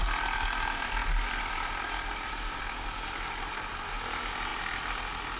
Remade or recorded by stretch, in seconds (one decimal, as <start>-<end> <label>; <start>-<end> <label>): 0.0-5.4 recorded